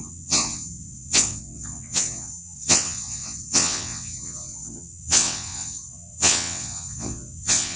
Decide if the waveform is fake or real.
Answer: fake